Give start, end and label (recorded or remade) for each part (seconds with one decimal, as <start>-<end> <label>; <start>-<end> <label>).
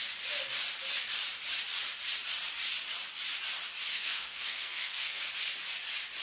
0.0-3.9 recorded; 3.9-5.3 remade; 5.3-6.2 recorded